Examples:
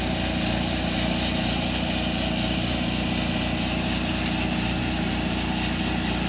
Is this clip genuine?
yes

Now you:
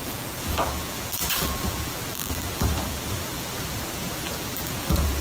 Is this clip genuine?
no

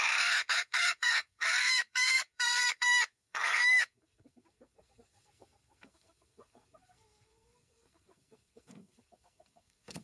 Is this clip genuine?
no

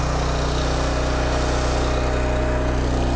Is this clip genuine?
yes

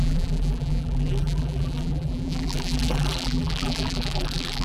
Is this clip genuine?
no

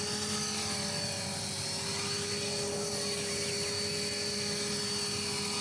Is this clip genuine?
no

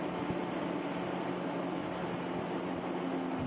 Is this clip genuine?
yes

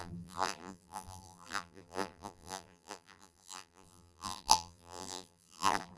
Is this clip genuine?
no